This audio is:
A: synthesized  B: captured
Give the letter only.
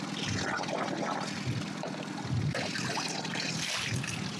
B